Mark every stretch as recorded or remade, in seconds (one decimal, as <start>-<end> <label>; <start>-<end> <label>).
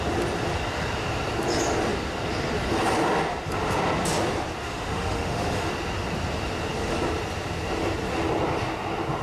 0.0-4.6 recorded; 4.6-5.7 remade; 5.7-9.2 recorded